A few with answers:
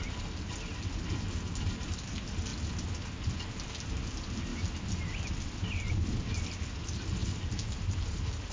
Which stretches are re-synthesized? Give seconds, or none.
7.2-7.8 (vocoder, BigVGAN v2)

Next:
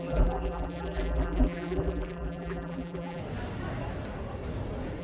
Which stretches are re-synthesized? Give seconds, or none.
0.0-3.2 (vocoder, BigVGAN v2)

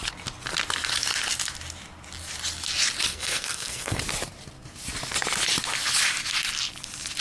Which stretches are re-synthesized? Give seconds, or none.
3.1-4.0 (codec, SNAC)